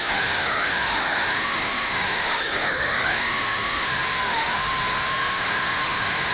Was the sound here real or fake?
fake